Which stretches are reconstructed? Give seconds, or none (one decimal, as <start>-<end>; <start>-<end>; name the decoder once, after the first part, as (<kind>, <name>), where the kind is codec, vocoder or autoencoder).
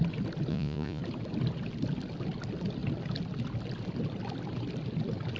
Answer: 0.5-1.0 (vocoder, Vocos)